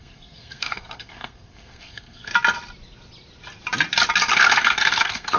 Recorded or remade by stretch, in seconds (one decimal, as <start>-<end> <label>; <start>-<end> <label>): 0.0-2.3 remade; 2.3-4.3 recorded; 4.3-5.4 remade